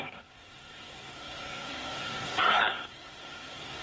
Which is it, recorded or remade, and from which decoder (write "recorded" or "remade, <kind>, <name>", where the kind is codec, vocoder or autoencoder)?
remade, codec, SNAC